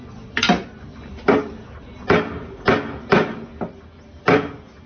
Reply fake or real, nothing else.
real